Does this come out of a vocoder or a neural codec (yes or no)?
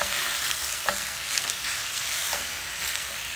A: yes